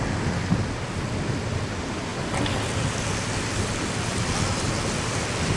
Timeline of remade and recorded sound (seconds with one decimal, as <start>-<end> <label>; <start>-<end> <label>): 0.0-5.6 recorded